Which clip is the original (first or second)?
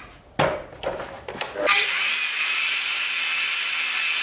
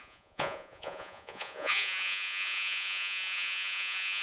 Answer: first